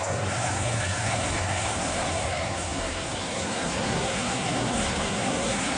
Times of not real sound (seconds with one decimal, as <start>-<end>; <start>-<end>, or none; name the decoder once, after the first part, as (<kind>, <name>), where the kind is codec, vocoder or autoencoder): 0.0-5.8 (codec, SNAC)